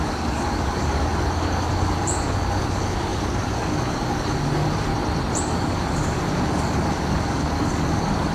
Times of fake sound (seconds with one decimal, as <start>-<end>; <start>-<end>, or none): 0.0-4.9; 5.4-8.3